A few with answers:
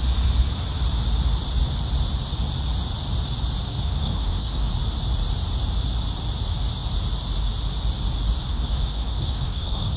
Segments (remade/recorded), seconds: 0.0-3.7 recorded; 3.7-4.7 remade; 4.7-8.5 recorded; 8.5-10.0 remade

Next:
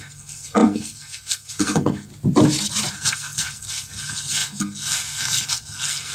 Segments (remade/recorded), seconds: 0.0-2.1 remade; 2.1-2.9 recorded; 2.9-6.1 remade

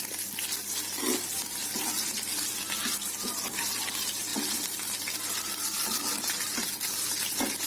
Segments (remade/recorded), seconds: 0.0-7.7 recorded

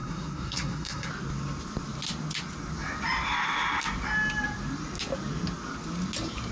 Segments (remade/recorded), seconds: 0.0-1.1 remade; 1.1-6.5 recorded